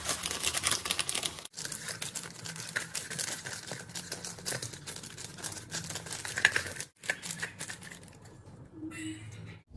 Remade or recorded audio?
recorded